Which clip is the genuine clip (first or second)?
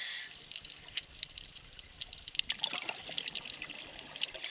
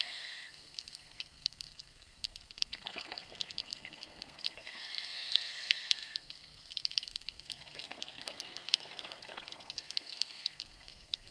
first